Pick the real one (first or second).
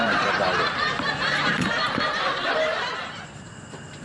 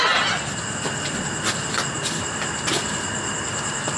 second